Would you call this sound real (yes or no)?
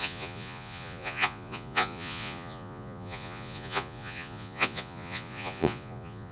no